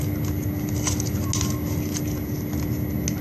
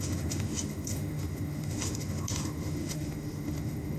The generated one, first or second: second